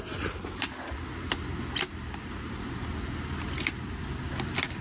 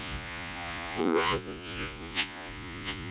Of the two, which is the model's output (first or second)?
second